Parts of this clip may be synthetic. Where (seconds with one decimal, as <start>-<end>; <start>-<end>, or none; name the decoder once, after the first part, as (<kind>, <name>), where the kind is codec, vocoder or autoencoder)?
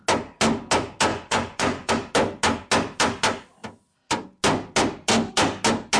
1.1-1.9 (vocoder, Vocos)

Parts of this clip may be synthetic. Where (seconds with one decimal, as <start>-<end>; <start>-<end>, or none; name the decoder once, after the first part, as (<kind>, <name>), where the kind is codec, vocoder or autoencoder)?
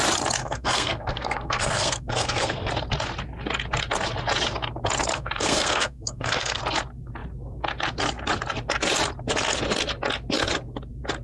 0.4-2.7 (codec, SNAC); 5.1-6.6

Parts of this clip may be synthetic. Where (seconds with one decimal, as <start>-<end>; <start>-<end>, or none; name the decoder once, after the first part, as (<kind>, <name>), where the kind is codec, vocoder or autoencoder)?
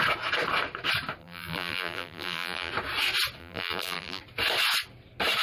1.2-2.7 (vocoder, BigVGAN v2); 3.4-4.2